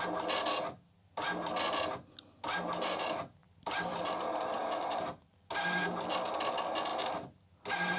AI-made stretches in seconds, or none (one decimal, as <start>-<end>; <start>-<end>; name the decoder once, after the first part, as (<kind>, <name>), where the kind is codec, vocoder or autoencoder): 3.4-5.3 (vocoder, BigVGAN v2)

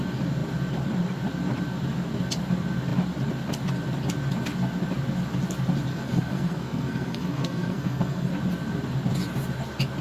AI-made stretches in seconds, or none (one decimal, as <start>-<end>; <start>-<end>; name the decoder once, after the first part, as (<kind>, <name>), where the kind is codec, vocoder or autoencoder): 5.9-8.3 (codec, SNAC)

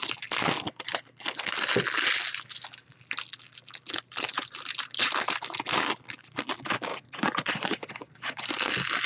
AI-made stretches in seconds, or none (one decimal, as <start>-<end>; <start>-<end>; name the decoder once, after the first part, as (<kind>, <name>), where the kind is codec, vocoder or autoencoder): 6.9-8.5 (vocoder, Vocos)

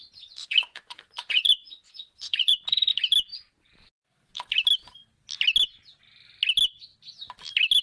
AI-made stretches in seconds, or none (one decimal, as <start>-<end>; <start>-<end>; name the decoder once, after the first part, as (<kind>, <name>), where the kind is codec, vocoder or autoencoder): 0.4-2.5 (vocoder, Vocos)

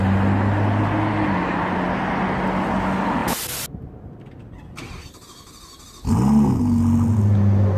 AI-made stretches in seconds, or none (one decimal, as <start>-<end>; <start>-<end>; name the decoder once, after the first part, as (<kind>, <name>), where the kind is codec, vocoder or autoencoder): none